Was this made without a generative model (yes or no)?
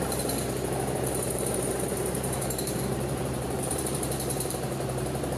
no